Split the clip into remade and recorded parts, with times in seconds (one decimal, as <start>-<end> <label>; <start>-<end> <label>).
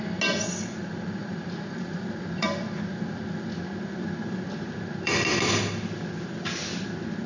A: 0.0-1.2 recorded; 1.2-5.6 remade; 5.6-7.3 recorded